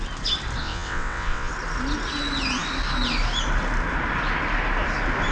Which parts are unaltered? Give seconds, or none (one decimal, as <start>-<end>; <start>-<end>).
0.0-0.6; 1.5-5.3